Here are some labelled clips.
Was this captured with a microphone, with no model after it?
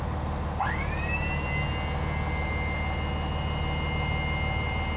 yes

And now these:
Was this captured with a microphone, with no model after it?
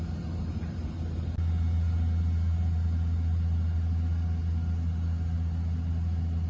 yes